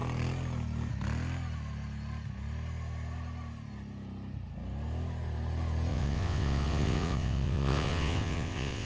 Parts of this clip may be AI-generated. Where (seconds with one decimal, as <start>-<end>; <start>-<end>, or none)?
5.9-8.9